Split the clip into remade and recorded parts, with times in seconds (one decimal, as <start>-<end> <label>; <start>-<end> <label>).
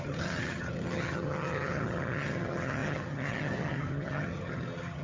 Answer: 0.0-5.0 remade